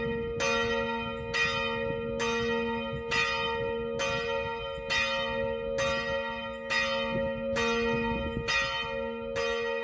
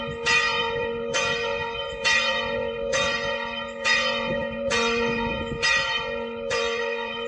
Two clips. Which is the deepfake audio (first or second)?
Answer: second